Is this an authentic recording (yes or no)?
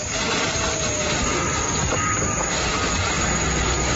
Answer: yes